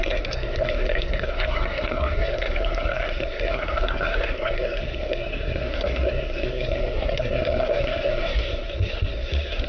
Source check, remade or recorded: remade